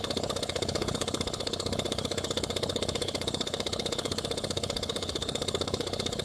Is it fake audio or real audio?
fake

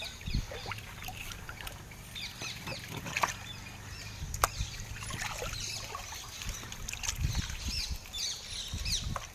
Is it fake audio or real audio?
real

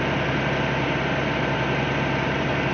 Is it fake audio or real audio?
real